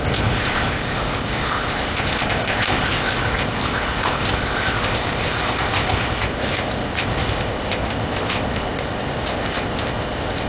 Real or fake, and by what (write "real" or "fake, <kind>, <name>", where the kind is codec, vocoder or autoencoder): fake, codec, ZipCodec